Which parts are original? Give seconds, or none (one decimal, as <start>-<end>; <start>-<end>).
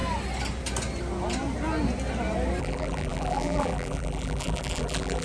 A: 0.0-2.6